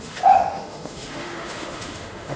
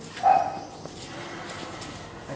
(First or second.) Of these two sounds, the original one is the second